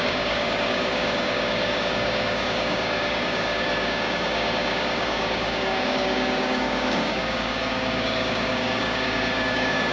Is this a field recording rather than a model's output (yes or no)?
no